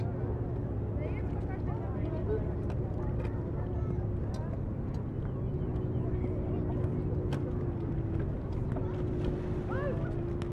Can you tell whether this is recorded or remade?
recorded